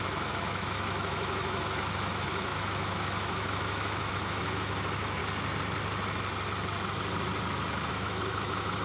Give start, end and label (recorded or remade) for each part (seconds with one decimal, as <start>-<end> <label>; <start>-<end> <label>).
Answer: 0.0-5.2 remade; 5.2-7.9 recorded; 7.9-8.8 remade